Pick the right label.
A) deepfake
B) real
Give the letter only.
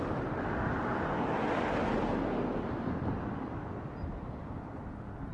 B